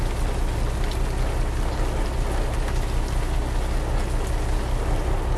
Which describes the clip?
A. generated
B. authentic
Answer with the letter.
B